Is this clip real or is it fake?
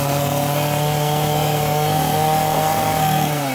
fake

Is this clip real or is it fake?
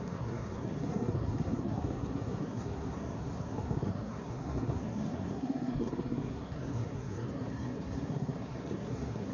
fake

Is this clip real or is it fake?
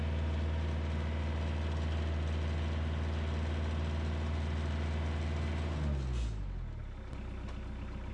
real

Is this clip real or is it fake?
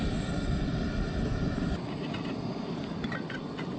real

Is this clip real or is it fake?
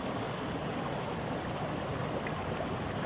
real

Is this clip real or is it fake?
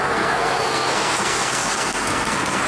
fake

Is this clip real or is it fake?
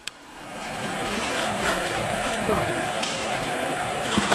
fake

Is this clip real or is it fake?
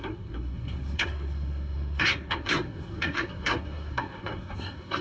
fake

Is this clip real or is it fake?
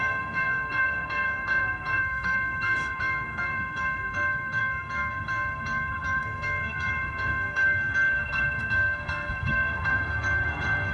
fake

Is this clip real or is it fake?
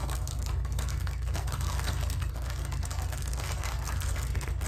fake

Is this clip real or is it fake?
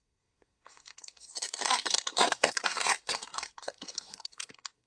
fake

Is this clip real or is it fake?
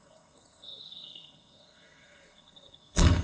fake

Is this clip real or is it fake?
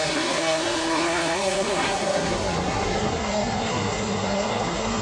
fake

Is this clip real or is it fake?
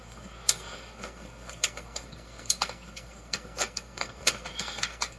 fake